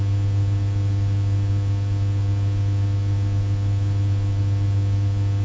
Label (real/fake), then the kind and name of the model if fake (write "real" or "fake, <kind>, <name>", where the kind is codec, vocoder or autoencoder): real